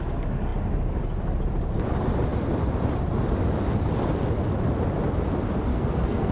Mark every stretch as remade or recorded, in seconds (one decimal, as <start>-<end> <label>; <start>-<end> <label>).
0.0-5.7 recorded; 5.7-6.3 remade